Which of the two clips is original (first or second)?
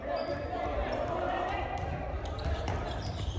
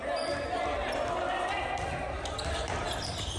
second